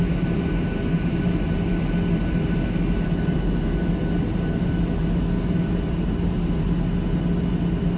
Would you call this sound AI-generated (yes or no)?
no